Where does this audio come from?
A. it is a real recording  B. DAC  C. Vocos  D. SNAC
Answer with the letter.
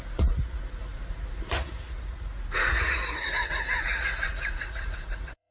C